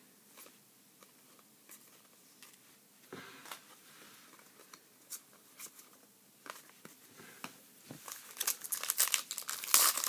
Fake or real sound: real